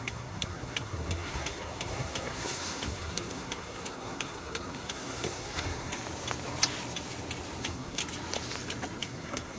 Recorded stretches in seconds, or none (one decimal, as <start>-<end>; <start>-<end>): 6.0-7.6; 8.0-9.0